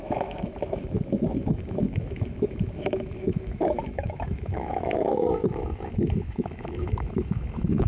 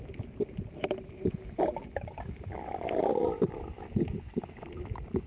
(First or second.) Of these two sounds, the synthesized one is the first